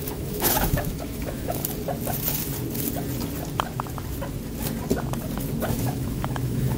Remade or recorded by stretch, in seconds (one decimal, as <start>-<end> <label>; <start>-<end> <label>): 0.0-1.6 remade; 1.6-5.7 recorded; 5.7-6.8 remade